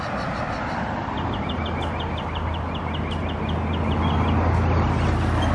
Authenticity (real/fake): real